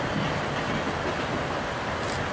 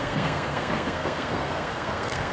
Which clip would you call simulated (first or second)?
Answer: second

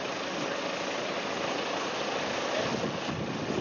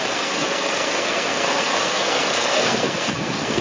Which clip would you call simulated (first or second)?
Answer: second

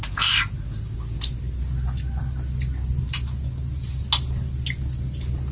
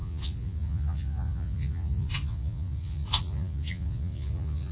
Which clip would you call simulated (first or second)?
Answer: second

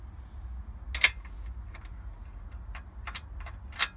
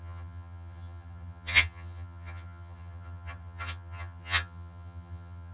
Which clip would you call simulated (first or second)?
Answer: second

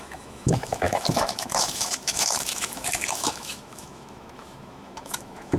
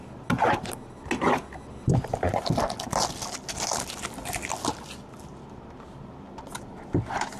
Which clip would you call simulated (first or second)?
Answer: first